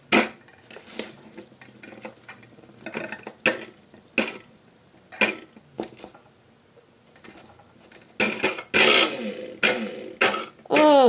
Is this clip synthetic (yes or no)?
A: no